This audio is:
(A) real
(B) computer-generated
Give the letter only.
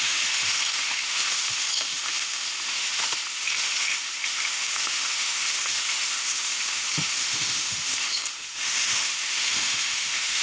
B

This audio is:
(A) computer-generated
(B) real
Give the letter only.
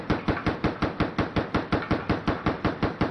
B